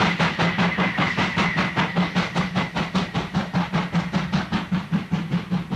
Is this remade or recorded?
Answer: recorded